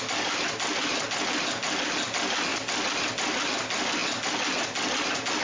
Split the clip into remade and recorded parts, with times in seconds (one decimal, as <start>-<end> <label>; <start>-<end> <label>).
0.0-5.4 recorded